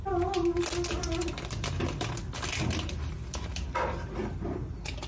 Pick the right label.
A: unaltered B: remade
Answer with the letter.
A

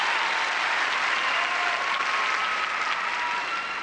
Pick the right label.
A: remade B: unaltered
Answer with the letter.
B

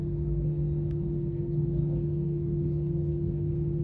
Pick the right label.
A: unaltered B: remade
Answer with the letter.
B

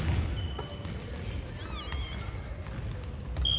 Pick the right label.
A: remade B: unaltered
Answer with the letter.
B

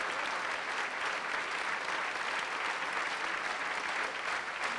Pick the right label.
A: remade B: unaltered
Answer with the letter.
B